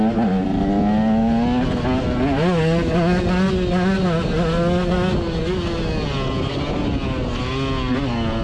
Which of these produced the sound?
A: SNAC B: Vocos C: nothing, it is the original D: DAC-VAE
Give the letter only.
C